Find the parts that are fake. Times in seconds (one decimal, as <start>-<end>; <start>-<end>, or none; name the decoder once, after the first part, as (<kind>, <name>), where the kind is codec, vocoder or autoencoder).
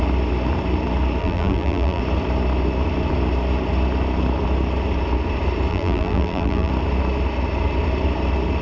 1.2-2.0 (vocoder, BigVGAN v2); 5.7-6.7